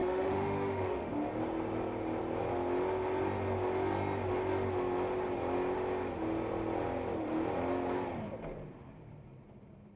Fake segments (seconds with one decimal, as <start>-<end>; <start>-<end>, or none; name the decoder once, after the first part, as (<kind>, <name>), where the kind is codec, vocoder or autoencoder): 0.0-1.1 (autoencoder, DAC-VAE)